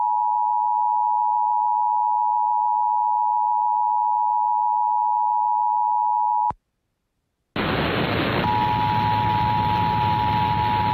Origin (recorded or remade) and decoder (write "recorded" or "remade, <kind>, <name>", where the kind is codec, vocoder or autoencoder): recorded